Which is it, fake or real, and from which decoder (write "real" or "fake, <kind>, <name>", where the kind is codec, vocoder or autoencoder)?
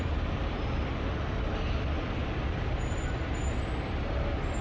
real